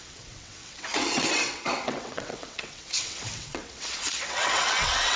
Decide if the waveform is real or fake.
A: fake